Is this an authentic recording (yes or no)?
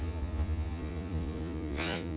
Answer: no